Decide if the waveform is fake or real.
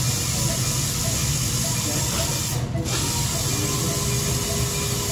real